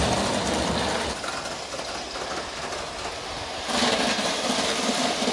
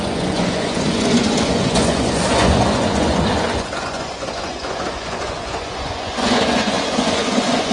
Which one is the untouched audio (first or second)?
first